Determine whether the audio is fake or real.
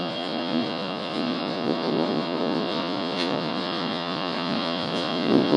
fake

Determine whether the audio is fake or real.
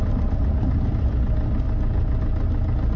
real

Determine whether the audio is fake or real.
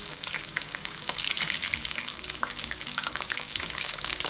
fake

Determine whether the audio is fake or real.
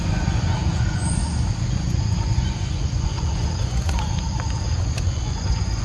fake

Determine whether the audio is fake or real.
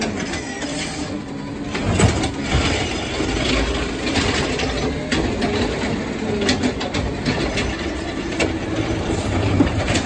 real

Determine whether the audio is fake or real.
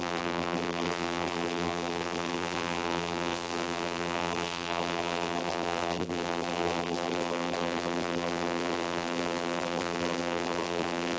fake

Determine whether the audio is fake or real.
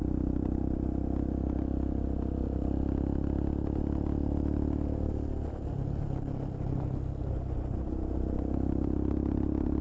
real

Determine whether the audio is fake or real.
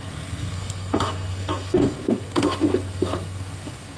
fake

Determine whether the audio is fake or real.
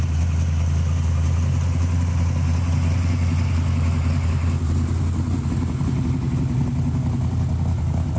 real